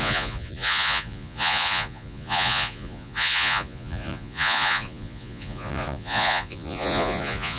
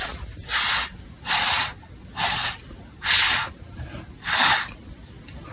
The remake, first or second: first